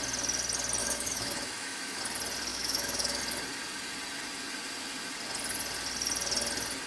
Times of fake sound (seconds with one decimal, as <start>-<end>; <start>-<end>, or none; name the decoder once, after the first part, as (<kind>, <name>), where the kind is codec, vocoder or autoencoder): 0.8-2.0 (autoencoder, DAC-VAE); 2.5-3.2

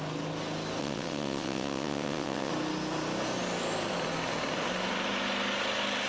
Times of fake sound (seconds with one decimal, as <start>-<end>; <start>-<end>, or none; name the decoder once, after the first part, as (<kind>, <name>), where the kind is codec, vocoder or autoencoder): 0.8-2.5 (vocoder, WaveNeXt)

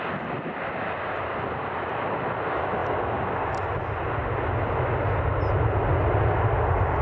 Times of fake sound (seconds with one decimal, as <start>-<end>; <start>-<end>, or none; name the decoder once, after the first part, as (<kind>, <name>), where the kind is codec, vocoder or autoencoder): none

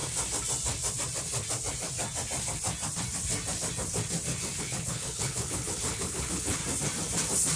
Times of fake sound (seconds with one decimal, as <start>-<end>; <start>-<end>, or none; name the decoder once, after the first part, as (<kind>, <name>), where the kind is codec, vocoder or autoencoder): 4.6-6.6 (codec, HILCodec)

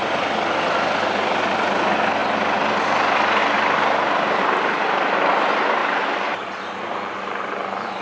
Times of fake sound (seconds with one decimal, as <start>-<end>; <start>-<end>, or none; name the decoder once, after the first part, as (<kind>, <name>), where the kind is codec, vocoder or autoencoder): 5.8-7.4 (vocoder, BigVGAN v2)

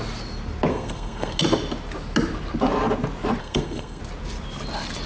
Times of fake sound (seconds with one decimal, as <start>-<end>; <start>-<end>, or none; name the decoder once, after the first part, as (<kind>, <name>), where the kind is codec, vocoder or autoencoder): 0.7-1.4 (codec, SNAC); 3.4-4.0